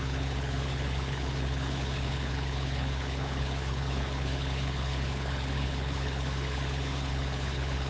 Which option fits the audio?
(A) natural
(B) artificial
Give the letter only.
B